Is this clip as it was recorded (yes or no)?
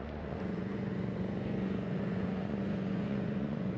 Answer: no